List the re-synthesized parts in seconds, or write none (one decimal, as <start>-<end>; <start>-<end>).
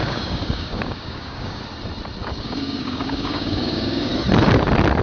0.0-1.6; 2.2-4.1